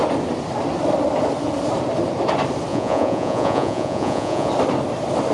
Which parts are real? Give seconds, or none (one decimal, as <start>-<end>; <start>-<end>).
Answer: 0.0-2.7; 4.5-5.3